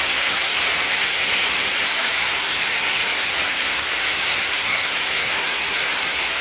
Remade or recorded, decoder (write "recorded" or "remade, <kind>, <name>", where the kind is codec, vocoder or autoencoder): remade, codec, SNAC